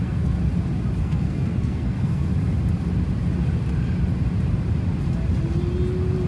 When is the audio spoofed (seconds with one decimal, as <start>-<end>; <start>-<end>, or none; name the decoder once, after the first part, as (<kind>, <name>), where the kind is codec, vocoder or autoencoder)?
0.0-0.4 (codec, SNAC); 1.0-2.3